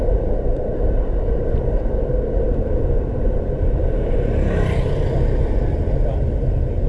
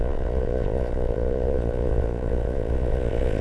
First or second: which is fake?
second